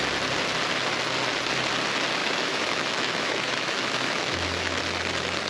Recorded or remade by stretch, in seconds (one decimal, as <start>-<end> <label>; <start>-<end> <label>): 0.0-2.2 recorded; 2.2-4.8 remade; 4.8-5.5 recorded